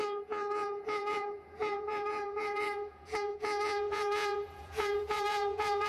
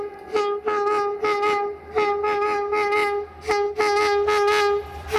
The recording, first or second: second